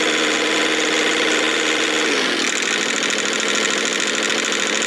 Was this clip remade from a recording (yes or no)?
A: no